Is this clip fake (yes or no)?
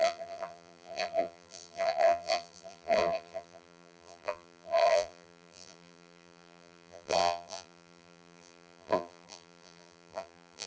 yes